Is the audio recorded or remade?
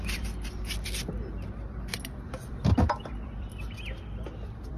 remade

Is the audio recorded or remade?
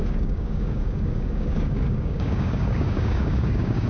remade